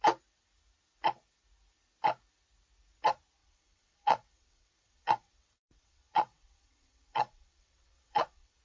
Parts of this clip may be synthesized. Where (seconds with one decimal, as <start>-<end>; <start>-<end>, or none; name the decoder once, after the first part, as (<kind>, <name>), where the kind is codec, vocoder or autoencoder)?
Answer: 3.4-8.6 (vocoder, WaveNeXt)